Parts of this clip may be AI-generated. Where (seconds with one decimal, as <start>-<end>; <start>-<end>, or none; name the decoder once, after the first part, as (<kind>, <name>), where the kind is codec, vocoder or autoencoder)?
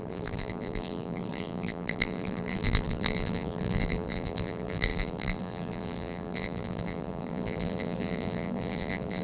0.0-9.2 (vocoder, BigVGAN v2)